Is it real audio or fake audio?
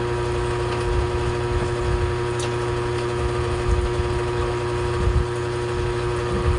real